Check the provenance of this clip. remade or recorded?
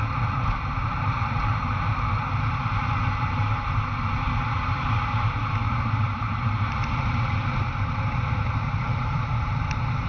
remade